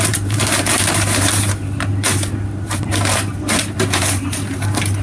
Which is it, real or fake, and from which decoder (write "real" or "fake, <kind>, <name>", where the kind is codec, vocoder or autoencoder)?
fake, vocoder, BigVGAN v2